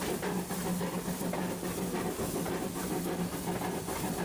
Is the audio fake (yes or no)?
no